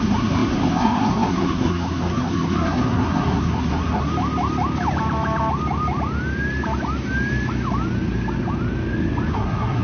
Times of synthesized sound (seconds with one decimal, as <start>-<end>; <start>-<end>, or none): 0.0-4.1; 9.3-9.8